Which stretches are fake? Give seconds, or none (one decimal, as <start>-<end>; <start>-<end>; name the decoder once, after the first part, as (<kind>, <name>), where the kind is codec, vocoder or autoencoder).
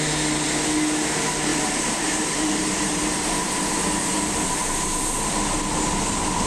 1.5-3.7 (vocoder, BigVGAN v2)